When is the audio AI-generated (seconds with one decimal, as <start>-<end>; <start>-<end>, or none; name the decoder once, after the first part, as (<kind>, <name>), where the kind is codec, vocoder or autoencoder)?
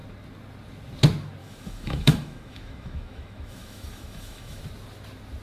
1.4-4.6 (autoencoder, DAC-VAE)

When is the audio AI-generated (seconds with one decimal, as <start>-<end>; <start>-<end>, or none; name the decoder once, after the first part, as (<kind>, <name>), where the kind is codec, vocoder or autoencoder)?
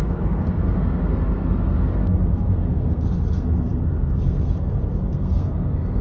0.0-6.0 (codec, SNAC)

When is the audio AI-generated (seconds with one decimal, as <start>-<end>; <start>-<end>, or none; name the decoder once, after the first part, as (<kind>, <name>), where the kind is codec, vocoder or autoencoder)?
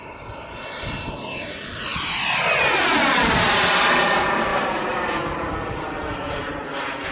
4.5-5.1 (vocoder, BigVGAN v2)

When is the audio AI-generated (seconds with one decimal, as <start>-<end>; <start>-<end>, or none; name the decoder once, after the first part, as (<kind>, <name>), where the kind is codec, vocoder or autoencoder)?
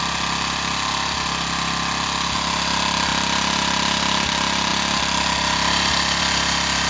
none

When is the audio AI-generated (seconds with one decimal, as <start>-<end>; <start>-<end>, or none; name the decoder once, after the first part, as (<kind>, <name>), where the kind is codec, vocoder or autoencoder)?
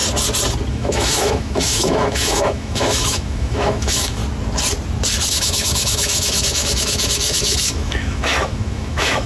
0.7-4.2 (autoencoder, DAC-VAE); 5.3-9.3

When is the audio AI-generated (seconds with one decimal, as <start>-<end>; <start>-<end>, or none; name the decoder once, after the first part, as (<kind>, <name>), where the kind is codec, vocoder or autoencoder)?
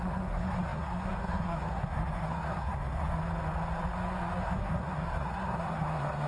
0.0-3.2 (codec, SNAC); 4.4-6.3